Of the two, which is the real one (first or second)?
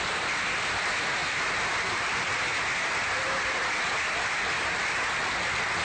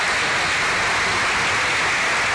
second